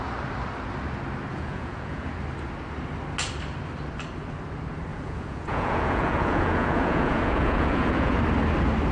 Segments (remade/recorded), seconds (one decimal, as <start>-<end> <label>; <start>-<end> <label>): 0.0-1.3 recorded; 1.3-2.1 remade; 2.1-4.9 recorded; 4.9-8.2 remade; 8.2-8.9 recorded